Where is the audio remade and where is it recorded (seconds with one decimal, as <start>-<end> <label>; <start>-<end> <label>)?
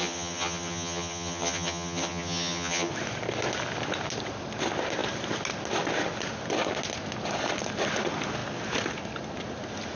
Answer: 0.0-2.9 remade; 2.9-10.0 recorded